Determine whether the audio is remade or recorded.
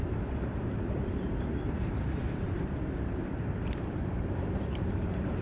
remade